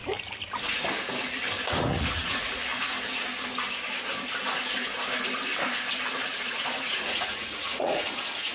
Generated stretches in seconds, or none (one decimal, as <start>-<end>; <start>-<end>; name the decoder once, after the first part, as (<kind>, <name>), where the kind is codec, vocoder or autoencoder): 1.7-2.6 (vocoder, Vocos); 6.2-8.5